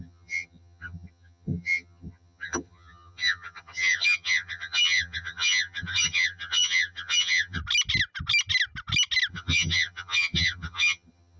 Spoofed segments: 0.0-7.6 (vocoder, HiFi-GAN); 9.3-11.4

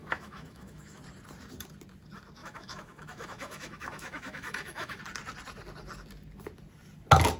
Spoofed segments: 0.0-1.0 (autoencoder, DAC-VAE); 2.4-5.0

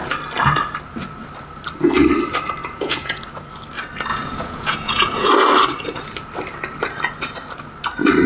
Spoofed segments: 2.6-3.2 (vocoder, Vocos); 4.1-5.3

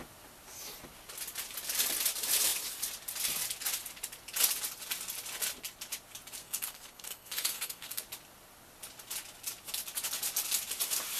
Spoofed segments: 6.4-8.0 (codec, SNAC)

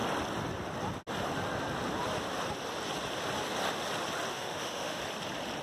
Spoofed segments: 4.3-5.0 (autoencoder, DAC-VAE)